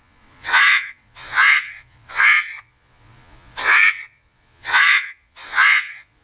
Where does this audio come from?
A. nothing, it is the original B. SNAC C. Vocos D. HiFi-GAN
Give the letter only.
C